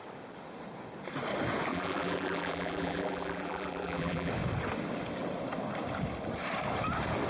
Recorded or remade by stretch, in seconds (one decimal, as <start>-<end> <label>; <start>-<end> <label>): 0.0-1.7 recorded; 1.7-4.3 remade; 4.3-7.3 recorded